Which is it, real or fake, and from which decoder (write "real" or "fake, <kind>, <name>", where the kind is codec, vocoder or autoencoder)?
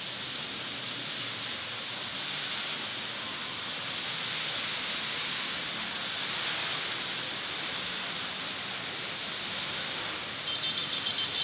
real